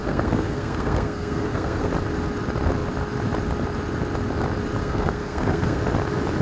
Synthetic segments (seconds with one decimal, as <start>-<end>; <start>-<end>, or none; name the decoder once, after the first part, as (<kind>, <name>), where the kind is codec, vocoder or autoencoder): 0.0-1.9 (codec, SNAC); 4.8-5.8